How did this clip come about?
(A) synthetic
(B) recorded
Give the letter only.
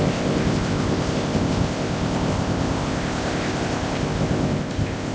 A